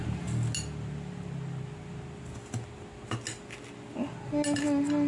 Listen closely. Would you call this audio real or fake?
real